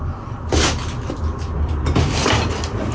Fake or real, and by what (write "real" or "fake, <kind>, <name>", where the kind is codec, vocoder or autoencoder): real